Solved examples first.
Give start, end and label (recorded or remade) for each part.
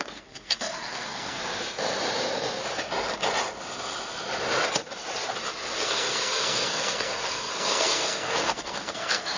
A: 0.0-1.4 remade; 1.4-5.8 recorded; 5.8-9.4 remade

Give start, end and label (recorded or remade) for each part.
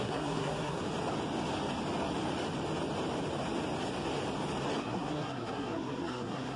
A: 0.0-0.8 remade; 0.8-4.8 recorded; 4.8-6.6 remade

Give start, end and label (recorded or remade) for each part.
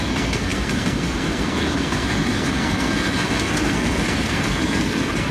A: 0.0-5.3 remade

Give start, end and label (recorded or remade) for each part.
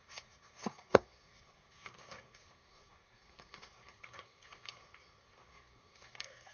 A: 0.0-6.5 remade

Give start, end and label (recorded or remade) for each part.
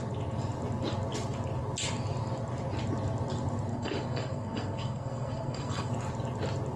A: 0.0-3.7 recorded; 3.7-5.9 remade; 5.9-6.8 recorded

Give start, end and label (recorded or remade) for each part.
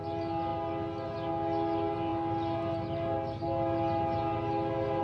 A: 0.0-5.0 recorded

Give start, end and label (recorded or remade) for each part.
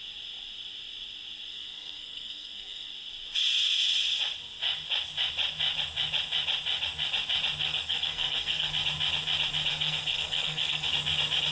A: 0.0-1.5 recorded; 1.5-2.9 remade; 2.9-7.6 recorded; 7.6-8.7 remade; 8.7-9.7 recorded; 9.7-10.9 remade; 10.9-11.5 recorded